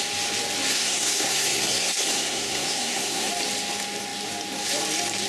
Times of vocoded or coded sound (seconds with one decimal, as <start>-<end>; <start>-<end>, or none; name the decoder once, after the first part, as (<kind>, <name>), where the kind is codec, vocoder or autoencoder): 0.7-3.3 (codec, SNAC)